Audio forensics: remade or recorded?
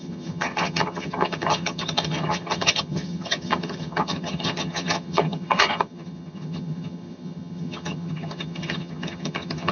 remade